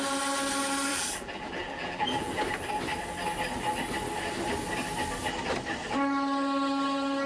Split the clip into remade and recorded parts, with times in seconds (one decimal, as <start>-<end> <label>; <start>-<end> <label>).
0.0-0.9 recorded; 0.9-2.4 remade; 2.4-7.3 recorded